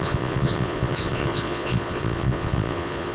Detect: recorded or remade remade